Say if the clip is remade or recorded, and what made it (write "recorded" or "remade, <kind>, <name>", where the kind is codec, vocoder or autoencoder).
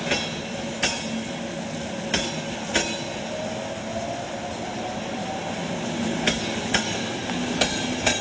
recorded